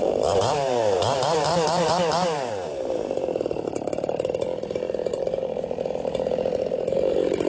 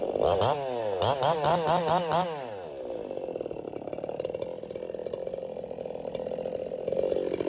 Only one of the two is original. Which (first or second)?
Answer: second